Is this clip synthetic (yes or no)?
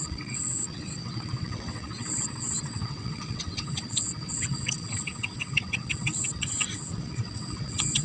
yes